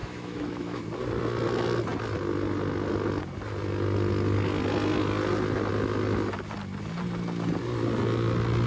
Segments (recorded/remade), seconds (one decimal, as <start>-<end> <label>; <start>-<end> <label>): 0.0-0.8 remade; 0.8-8.7 recorded